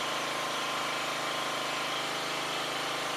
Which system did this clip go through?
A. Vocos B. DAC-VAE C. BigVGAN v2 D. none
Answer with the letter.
D